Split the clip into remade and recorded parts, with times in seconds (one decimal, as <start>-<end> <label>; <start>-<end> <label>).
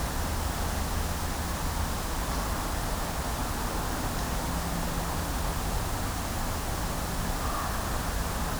0.0-8.6 recorded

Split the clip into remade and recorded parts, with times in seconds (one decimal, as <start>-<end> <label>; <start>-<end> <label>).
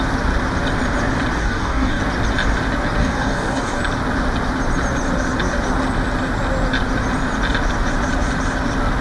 0.0-1.4 recorded; 1.4-2.0 remade; 2.0-3.0 recorded; 3.0-3.8 remade; 3.8-9.0 recorded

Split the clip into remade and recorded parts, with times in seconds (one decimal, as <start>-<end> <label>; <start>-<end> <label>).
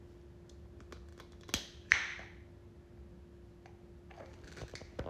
0.0-5.1 recorded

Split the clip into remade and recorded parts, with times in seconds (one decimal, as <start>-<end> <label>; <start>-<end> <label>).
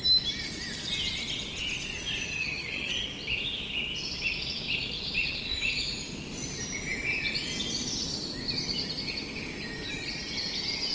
0.0-2.3 recorded; 2.3-2.9 remade; 2.9-10.9 recorded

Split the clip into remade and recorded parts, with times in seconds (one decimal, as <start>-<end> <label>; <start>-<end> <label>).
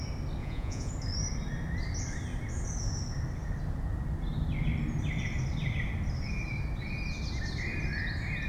0.0-0.4 recorded; 0.4-0.9 remade; 0.9-8.5 recorded